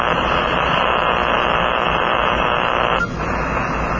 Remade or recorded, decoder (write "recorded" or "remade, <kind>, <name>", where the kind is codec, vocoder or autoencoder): recorded